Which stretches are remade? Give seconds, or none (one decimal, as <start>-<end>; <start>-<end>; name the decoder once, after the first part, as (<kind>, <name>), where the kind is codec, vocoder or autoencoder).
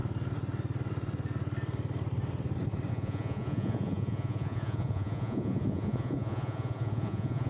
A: 2.9-7.5 (vocoder, Vocos)